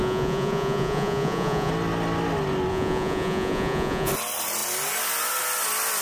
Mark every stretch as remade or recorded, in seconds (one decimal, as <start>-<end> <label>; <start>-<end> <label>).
0.0-1.7 remade; 1.7-2.7 recorded; 2.7-4.1 remade; 4.1-6.0 recorded